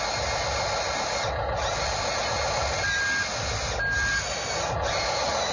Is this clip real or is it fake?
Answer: real